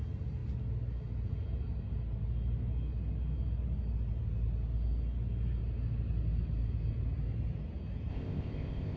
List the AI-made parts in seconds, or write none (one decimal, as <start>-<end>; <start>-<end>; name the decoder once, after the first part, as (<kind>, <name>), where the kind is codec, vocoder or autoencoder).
8.1-9.0 (codec, ZipCodec)